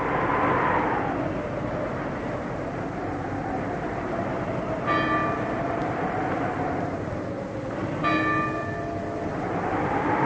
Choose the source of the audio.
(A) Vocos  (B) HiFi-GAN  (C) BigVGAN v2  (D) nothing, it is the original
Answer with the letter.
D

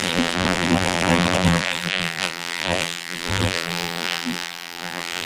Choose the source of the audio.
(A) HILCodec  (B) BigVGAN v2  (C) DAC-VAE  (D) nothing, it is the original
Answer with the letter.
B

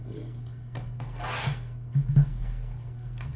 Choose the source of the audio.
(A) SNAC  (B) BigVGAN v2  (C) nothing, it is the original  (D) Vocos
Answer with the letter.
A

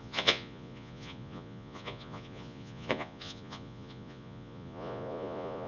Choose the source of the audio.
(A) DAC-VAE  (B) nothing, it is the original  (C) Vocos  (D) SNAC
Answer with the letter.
C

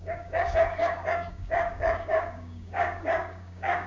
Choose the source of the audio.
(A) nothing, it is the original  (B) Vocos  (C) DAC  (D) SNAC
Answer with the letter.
C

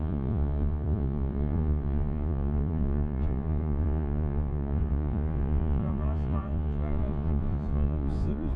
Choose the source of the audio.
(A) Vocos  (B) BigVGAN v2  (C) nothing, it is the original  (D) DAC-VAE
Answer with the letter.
A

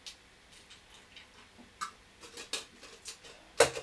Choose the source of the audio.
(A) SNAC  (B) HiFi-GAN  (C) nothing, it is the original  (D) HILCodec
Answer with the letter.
C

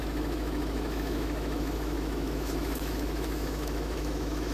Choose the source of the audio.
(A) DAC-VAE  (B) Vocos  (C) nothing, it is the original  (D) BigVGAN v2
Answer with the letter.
A